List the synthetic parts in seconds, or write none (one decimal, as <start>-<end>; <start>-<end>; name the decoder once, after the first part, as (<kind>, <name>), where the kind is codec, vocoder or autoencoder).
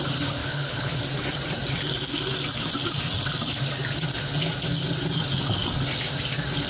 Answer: 0.4-1.0 (codec, HILCodec)